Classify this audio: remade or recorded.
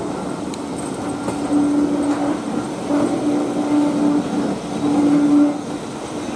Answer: recorded